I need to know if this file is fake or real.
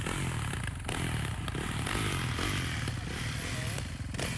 real